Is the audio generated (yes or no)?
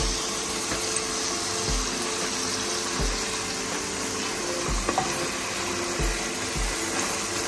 no